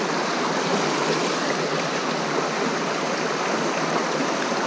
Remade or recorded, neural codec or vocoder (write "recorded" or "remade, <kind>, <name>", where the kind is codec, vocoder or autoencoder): recorded